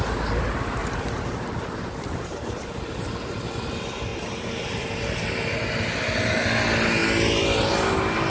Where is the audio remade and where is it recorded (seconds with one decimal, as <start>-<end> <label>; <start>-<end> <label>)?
0.0-0.8 recorded; 0.8-3.5 remade; 3.5-4.1 recorded; 4.1-4.8 remade; 4.8-8.3 recorded